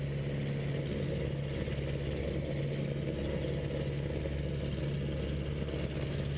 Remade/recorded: recorded